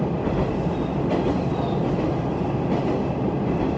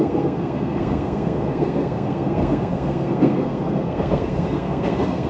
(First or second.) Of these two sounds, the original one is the first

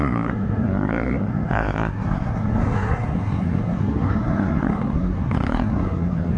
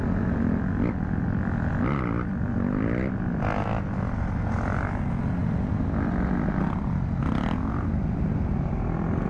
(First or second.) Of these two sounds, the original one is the second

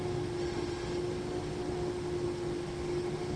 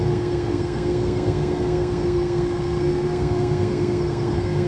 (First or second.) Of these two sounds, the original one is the first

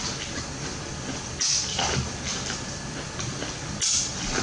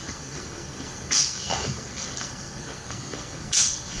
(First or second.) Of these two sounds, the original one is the first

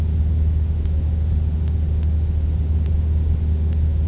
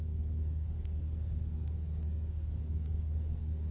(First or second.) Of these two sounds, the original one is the first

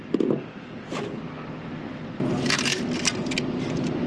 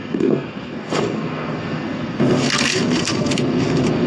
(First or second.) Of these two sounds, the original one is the first